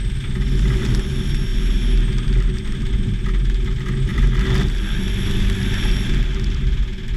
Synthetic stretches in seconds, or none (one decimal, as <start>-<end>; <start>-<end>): none